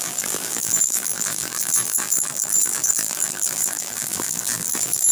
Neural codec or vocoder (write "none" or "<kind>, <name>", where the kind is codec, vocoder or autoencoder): vocoder, BigVGAN v2